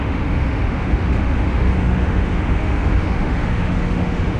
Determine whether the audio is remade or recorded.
remade